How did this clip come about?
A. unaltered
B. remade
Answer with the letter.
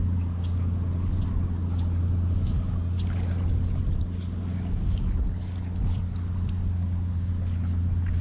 A